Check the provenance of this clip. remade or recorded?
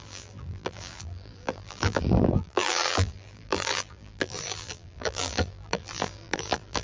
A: remade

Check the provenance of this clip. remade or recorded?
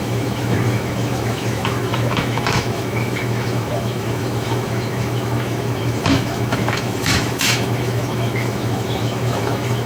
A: remade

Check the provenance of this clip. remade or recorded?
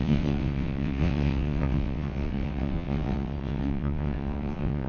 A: remade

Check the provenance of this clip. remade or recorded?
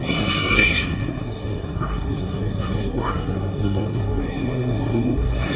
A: remade